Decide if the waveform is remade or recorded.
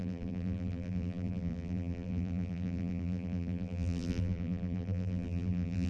remade